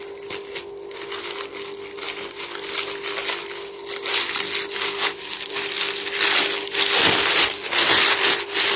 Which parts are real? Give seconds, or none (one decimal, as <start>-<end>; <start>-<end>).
0.0-8.8